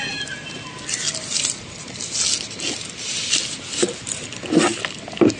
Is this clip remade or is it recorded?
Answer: recorded